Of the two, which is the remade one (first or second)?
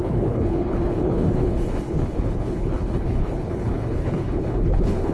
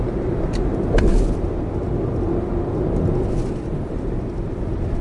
first